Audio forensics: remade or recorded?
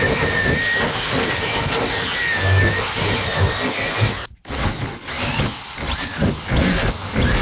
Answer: recorded